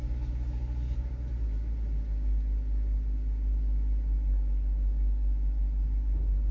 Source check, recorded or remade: recorded